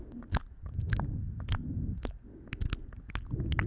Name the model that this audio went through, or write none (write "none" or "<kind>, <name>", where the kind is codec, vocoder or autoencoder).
none